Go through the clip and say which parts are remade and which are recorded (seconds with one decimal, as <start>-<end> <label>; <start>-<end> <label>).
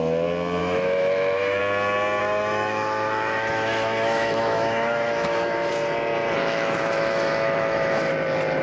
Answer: 0.0-0.6 recorded; 0.6-1.6 remade; 1.6-2.2 recorded; 2.2-5.7 remade; 5.7-6.4 recorded; 6.4-8.1 remade; 8.1-8.6 recorded